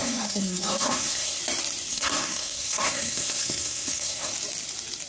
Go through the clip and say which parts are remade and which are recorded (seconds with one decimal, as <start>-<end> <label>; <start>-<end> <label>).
0.0-1.4 remade; 1.4-1.9 recorded; 1.9-4.3 remade; 4.3-5.1 recorded

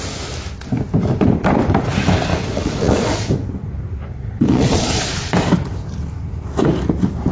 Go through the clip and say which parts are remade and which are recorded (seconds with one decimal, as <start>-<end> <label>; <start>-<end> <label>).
0.0-2.3 recorded; 2.3-3.3 remade; 3.3-4.1 recorded; 4.1-5.0 remade; 5.0-7.3 recorded